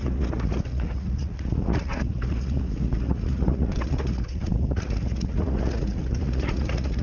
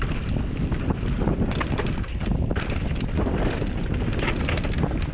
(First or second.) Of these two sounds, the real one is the second